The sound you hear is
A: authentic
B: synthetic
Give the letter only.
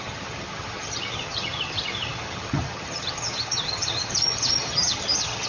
B